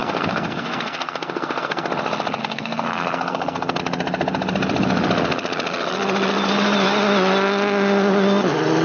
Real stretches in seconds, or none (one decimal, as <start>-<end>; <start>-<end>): 1.9-2.4; 3.8-8.8